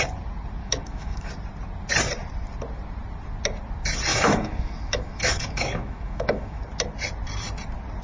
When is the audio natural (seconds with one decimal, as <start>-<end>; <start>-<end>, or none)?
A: 0.0-0.6; 1.3-4.1; 6.6-8.0